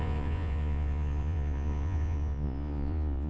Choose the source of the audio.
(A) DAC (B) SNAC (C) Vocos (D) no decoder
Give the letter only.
C